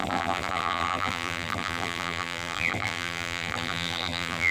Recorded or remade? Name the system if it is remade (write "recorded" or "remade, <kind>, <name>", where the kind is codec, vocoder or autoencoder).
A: remade, vocoder, BigVGAN v2